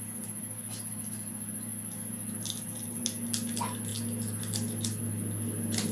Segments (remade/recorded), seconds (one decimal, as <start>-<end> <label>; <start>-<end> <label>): 0.0-5.9 recorded